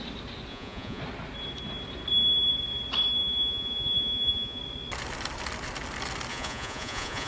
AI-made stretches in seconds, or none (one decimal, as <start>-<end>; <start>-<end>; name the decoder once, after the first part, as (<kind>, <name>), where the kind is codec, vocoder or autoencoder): 0.5-1.0 (vocoder, Vocos); 3.2-4.6; 6.3-7.3